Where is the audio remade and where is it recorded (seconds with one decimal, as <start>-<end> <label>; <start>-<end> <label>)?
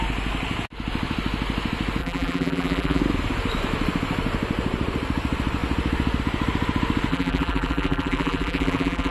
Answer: 0.0-2.0 recorded; 2.0-3.0 remade; 3.0-7.1 recorded; 7.1-9.1 remade